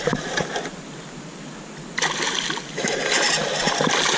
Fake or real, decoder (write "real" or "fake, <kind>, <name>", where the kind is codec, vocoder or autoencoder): real